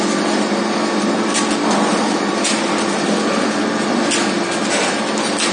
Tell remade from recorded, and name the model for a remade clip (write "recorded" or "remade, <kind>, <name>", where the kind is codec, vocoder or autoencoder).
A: recorded